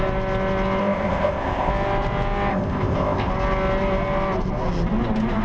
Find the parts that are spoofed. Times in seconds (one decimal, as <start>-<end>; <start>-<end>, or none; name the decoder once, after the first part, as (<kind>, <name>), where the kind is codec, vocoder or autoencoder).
0.8-1.7 (codec, ZipCodec); 2.5-3.3